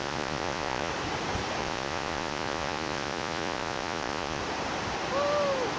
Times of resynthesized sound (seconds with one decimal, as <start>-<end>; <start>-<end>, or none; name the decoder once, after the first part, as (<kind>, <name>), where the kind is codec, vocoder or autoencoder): 0.0-0.9 (vocoder, Vocos); 1.6-4.4